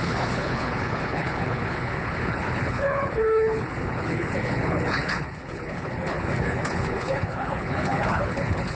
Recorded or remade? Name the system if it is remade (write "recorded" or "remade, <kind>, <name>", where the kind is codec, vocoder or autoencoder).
remade, codec, HILCodec